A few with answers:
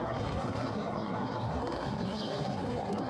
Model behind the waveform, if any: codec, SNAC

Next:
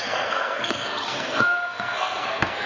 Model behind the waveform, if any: codec, SNAC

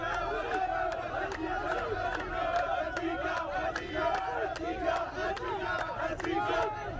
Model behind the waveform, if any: none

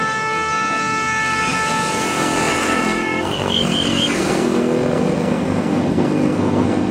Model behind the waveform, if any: codec, SNAC